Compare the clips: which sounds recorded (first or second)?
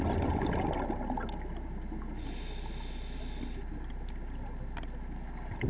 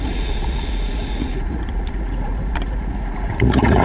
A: first